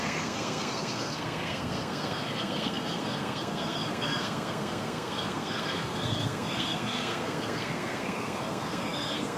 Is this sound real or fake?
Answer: fake